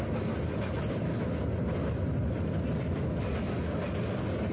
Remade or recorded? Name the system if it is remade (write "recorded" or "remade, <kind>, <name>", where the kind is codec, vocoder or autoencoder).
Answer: recorded